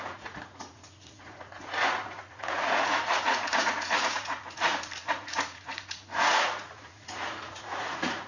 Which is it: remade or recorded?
remade